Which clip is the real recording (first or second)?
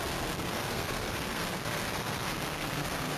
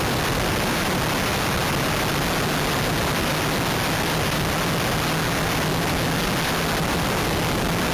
second